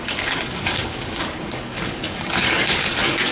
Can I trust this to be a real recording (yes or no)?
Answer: no